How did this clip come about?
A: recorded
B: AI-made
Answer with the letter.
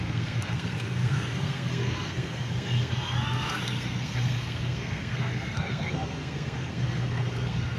B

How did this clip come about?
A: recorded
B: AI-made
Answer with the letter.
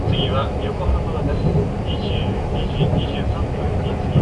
A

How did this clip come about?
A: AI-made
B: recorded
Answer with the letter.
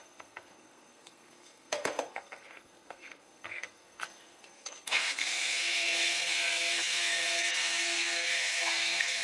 A